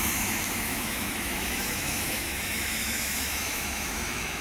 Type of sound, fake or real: fake